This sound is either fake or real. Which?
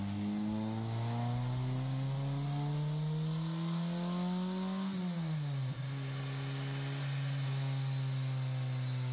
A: real